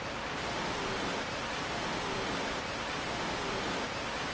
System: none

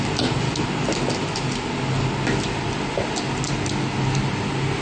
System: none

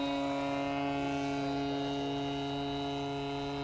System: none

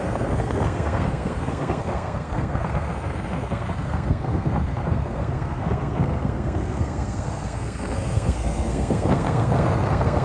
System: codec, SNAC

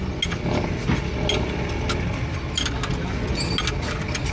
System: none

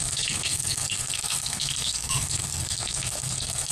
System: codec, SNAC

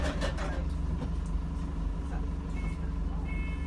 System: none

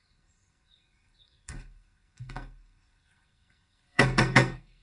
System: codec, SNAC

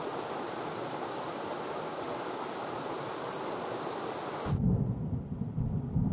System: none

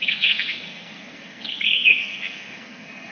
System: codec, SNAC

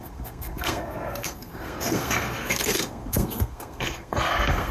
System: codec, SNAC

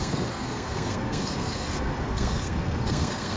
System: codec, SNAC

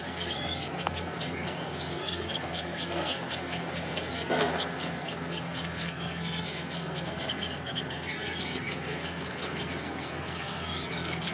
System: codec, SNAC